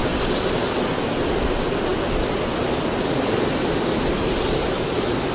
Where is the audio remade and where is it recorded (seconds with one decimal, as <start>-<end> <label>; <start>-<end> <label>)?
0.0-5.3 recorded